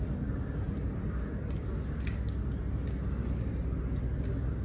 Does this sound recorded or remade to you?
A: recorded